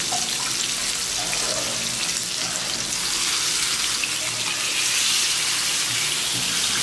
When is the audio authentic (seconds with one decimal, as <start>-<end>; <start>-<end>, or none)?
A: 0.0-6.8